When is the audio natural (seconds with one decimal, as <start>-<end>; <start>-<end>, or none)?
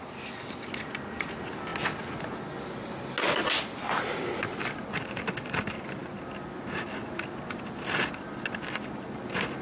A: 0.0-9.6